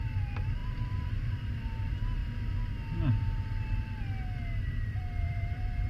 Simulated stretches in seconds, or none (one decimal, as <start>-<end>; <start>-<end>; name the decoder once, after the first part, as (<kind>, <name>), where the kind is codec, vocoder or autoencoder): 0.0-2.2 (vocoder, BigVGAN v2); 4.6-5.9